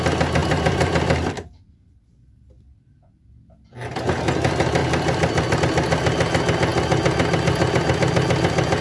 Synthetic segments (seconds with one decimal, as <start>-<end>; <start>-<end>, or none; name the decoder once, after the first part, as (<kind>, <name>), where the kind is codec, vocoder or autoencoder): 0.4-1.5 (vocoder, BigVGAN v2); 4.8-5.6